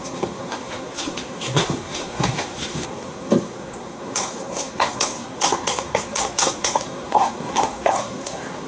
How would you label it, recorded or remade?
remade